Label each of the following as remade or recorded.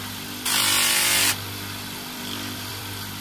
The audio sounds remade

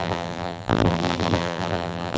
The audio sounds remade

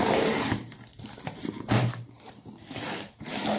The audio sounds remade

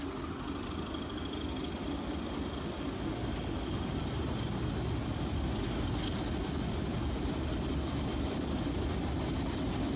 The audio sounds recorded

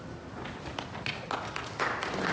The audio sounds recorded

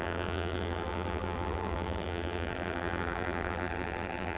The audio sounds remade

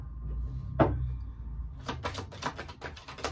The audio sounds recorded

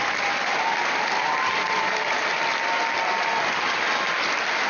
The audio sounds recorded